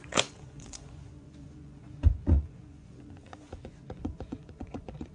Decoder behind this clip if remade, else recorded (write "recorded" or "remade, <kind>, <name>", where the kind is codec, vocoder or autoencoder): remade, vocoder, Vocos